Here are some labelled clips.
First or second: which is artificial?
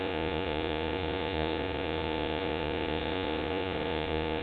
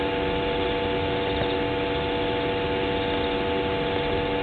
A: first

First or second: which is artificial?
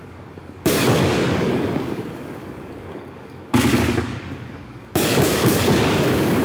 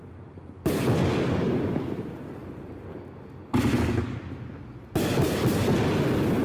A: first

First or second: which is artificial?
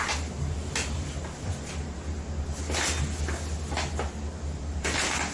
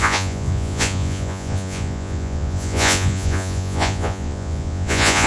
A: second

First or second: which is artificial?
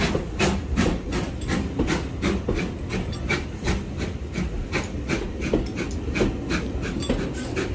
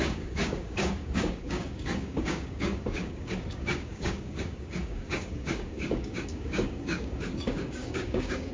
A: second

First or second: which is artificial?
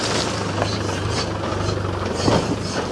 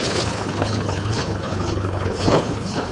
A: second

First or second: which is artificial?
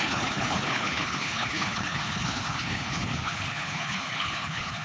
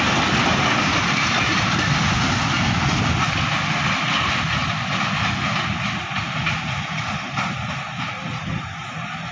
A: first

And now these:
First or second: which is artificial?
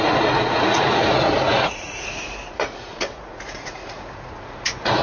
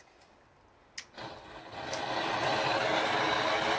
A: first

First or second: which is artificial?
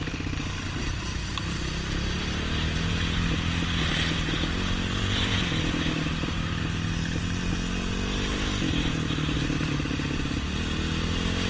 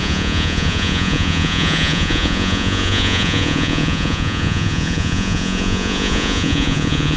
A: second